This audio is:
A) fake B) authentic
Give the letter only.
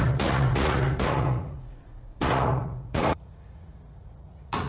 A